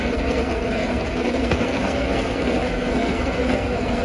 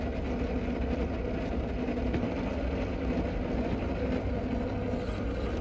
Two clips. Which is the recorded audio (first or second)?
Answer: second